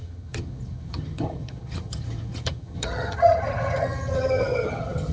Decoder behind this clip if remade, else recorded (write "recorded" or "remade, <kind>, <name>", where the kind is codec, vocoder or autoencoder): remade, vocoder, HiFi-GAN